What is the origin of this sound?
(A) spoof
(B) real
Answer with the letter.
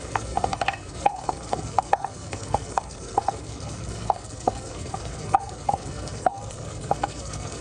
A